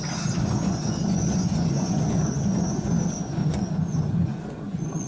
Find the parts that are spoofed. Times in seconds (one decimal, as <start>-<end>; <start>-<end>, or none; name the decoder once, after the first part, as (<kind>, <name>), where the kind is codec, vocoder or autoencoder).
0.5-2.9 (vocoder, Vocos); 3.4-5.1